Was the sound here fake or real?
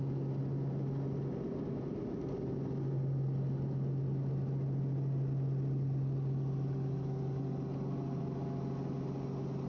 real